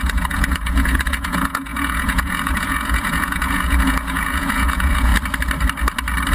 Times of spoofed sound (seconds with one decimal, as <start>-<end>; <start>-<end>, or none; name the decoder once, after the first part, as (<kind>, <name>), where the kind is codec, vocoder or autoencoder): 0.0-5.1 (vocoder, Vocos)